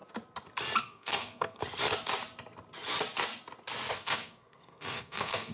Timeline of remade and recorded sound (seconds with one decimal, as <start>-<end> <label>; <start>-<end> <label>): 0.0-0.8 recorded; 0.8-1.6 remade; 1.6-3.9 recorded; 3.9-5.5 remade